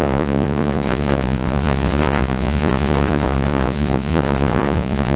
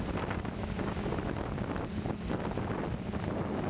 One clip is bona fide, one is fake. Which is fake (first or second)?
first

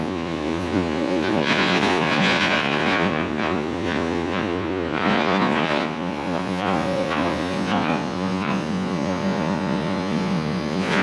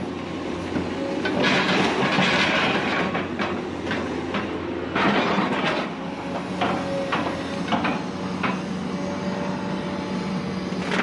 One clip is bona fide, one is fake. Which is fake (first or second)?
first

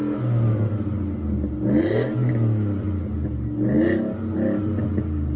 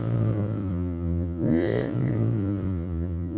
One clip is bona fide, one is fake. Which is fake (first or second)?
second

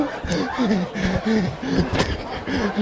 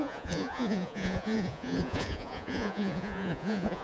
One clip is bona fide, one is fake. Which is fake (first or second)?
second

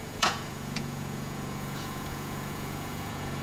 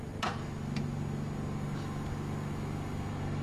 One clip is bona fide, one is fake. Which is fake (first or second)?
first